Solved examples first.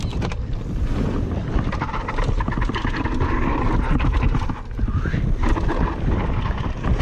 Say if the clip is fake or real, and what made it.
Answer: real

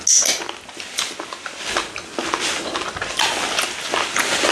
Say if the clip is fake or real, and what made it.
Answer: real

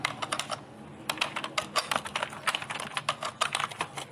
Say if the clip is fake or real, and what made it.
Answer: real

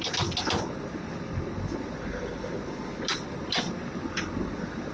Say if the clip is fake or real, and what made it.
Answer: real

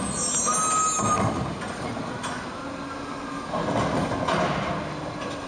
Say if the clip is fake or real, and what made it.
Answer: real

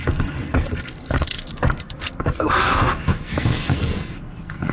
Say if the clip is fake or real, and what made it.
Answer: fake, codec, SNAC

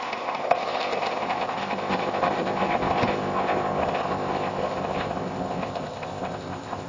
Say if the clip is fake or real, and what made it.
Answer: fake, codec, ZipCodec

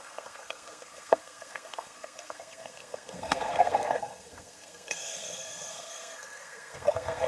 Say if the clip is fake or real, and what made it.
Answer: fake, codec, SNAC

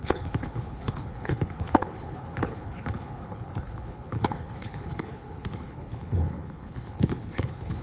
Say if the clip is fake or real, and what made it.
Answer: fake, codec, HILCodec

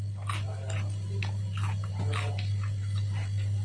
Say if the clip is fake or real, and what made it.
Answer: real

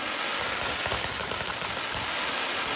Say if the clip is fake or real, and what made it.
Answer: real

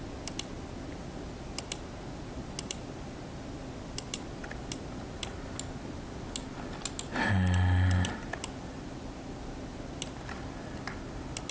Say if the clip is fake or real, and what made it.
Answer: real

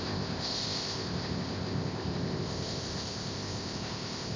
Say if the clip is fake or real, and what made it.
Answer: fake, codec, ZipCodec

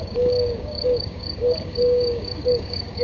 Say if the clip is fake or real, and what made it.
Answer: fake, codec, DAC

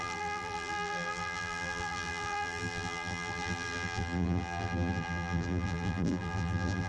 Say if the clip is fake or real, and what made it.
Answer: fake, vocoder, BigVGAN v2